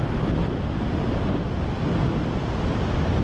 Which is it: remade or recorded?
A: recorded